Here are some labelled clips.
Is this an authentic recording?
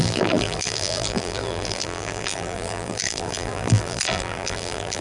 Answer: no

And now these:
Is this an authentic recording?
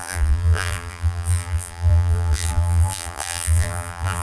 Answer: no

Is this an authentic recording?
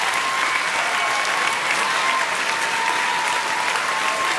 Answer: yes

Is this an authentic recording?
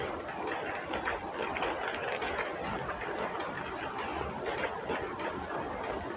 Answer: yes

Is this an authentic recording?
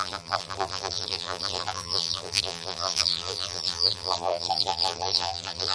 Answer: no